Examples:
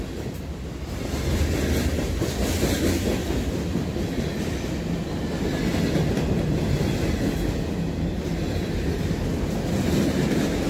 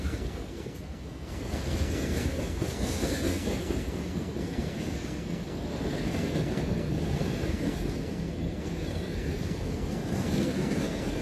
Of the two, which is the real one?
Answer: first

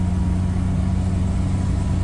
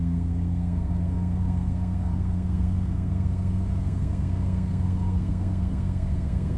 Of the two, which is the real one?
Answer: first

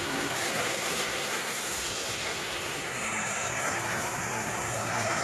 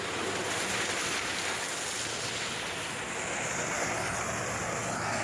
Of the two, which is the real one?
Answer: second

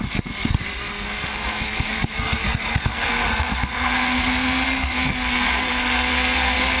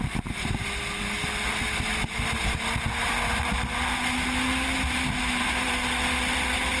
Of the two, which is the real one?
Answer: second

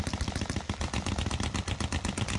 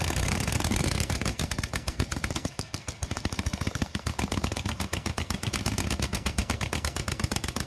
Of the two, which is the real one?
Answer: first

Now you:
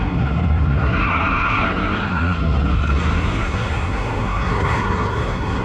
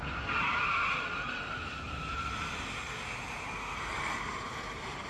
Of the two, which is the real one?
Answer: second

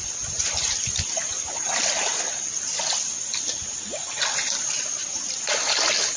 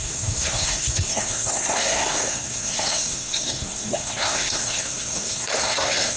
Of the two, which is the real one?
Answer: first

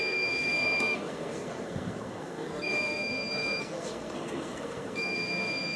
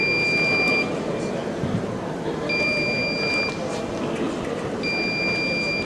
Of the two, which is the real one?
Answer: second